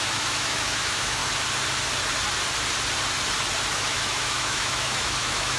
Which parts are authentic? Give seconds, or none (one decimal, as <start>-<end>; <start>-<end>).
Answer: 1.2-3.7